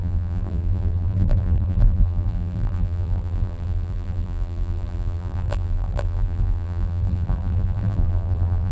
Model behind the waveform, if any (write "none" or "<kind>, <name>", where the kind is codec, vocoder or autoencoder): vocoder, BigVGAN v2